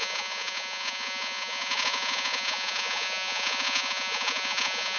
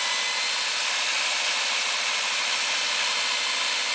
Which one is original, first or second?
second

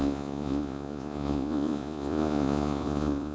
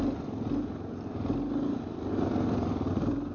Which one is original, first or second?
second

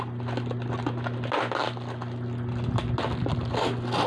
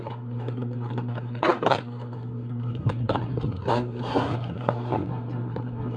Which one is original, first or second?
first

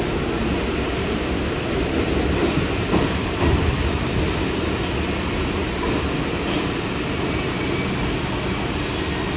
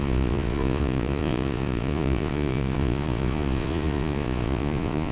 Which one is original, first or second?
first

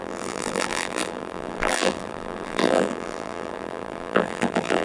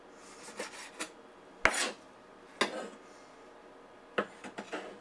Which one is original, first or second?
second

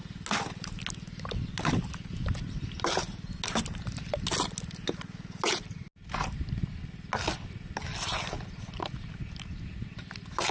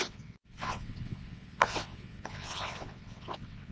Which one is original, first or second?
first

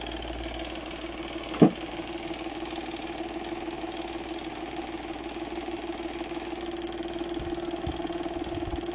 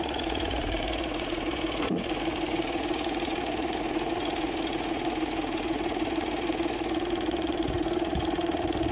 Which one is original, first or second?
first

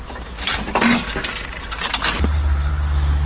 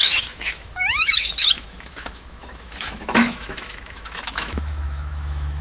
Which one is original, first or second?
first